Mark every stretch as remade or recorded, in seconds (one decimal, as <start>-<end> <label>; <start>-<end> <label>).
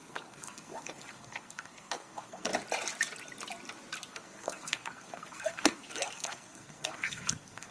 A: 0.0-2.5 remade; 2.5-4.1 recorded; 4.1-7.7 remade